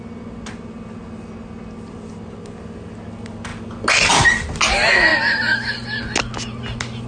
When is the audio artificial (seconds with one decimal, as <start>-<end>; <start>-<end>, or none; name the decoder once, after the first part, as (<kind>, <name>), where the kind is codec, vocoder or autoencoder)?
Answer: none